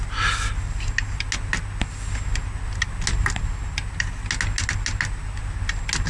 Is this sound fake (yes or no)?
no